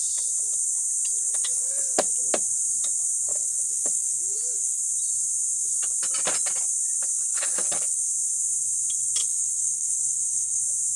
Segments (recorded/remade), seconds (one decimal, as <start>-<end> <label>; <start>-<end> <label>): 0.0-1.3 recorded; 1.3-2.0 remade; 2.0-3.3 recorded; 3.3-4.8 remade; 4.8-7.3 recorded; 7.3-8.0 remade; 8.0-9.2 recorded; 9.2-10.6 remade; 10.6-11.0 recorded